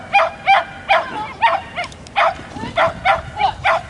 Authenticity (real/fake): real